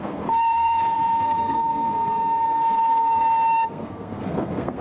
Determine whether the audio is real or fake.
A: fake